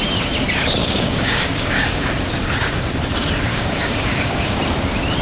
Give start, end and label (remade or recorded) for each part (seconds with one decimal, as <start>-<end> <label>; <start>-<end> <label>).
0.0-0.8 recorded; 0.8-2.1 remade; 2.1-3.5 recorded; 3.5-4.6 remade; 4.6-5.2 recorded